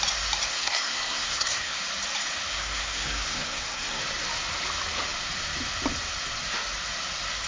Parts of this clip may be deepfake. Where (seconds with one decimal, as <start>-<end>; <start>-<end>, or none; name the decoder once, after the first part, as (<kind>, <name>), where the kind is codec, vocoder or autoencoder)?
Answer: 0.5-1.8 (codec, SNAC); 2.5-4.0